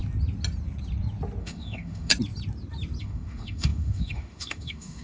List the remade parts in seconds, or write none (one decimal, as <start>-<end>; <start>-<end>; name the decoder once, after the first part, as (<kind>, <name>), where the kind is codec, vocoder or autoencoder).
1.4-2.1 (autoencoder, DAC-VAE); 3.0-5.0